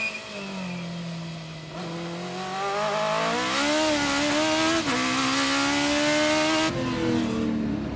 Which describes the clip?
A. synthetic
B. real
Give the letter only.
B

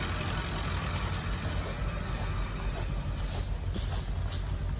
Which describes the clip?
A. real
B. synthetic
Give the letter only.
A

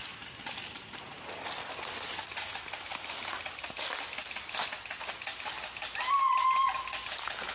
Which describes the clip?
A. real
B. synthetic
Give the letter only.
A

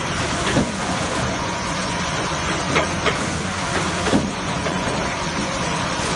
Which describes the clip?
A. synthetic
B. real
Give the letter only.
A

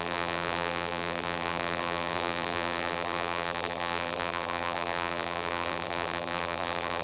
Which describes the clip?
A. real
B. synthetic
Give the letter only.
B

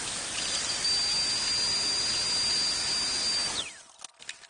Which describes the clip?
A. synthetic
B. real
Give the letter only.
B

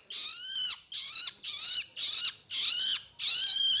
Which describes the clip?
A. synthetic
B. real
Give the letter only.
B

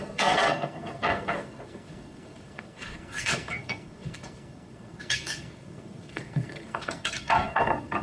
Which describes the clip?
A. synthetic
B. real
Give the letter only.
A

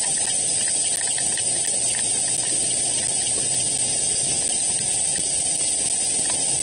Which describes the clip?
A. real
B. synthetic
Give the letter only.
A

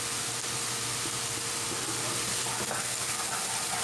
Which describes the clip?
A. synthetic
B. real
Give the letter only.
B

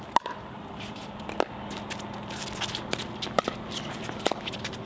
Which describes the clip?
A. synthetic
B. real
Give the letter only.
B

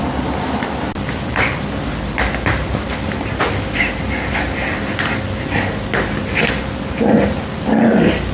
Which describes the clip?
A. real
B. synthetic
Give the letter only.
A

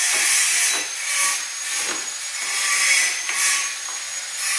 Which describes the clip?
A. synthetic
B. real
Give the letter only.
B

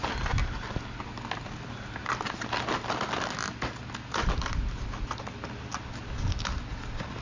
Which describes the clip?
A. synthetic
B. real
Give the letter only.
B